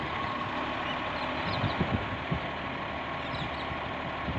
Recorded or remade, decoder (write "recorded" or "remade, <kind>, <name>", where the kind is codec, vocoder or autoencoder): recorded